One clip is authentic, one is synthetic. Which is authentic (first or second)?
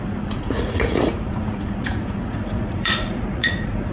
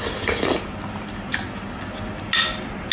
second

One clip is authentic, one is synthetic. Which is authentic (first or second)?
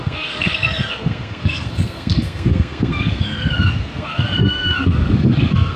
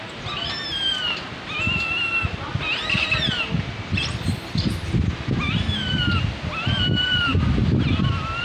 second